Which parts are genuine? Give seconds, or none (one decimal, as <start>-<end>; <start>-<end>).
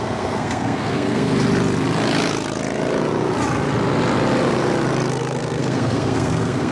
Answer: 1.3-5.1